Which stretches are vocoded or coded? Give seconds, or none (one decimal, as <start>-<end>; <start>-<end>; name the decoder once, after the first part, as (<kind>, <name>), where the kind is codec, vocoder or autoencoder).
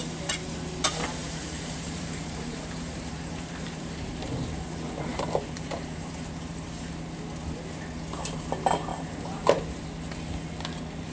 1.2-3.9 (vocoder, BigVGAN v2); 5.1-6.9; 8.9-9.6